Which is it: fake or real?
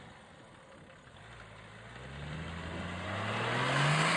real